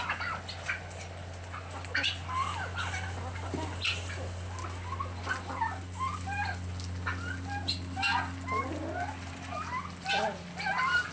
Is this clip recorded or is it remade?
recorded